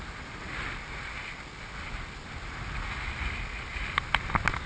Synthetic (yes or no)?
no